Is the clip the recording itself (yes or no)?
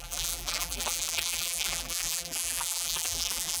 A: no